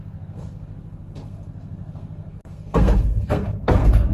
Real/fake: fake